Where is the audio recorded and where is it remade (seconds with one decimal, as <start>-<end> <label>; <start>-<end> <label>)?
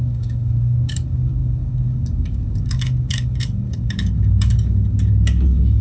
0.0-5.8 remade